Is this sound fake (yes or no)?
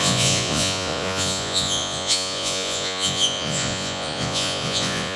yes